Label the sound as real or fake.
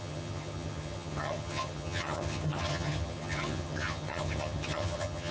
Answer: fake